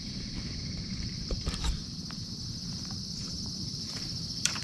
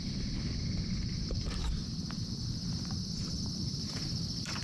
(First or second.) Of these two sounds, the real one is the second